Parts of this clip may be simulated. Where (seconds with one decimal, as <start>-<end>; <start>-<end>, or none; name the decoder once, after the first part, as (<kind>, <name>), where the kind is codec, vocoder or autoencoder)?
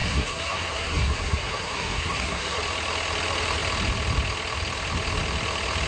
0.0-2.6 (codec, SNAC)